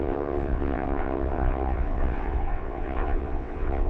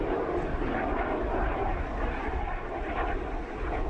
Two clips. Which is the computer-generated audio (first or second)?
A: first